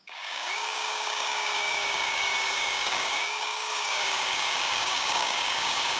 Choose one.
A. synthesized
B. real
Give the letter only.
A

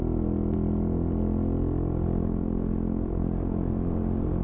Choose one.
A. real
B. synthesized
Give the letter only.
A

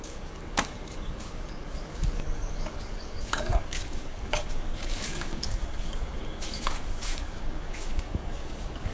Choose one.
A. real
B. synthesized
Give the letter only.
B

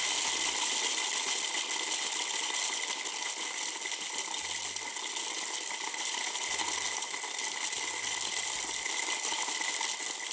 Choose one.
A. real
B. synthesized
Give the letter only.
A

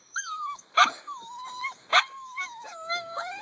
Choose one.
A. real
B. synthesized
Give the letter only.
B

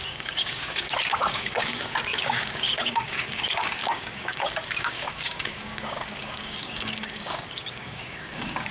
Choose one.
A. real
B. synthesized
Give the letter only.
B